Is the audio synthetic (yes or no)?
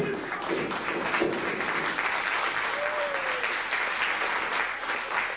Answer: no